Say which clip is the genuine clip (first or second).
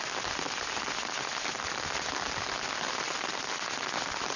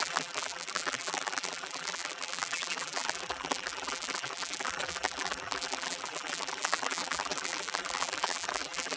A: first